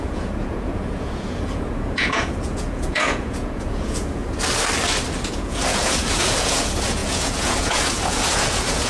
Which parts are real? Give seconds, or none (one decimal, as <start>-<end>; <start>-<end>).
4.2-5.3